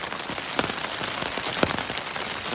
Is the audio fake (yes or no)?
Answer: no